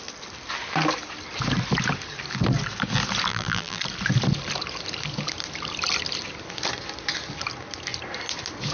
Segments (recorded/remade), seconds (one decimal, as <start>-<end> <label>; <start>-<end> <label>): 0.0-3.3 recorded; 3.3-3.8 remade; 3.8-8.7 recorded